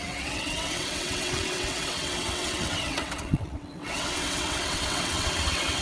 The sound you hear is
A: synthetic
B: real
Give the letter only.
A